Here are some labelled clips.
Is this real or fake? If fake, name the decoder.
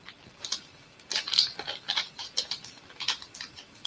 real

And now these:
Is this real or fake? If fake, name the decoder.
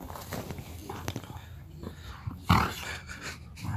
real